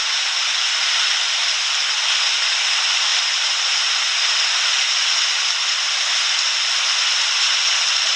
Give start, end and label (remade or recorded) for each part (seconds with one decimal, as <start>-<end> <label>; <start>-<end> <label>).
0.0-8.2 recorded